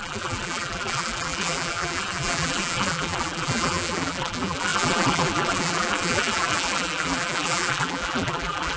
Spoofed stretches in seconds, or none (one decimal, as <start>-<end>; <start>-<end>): 0.0-8.8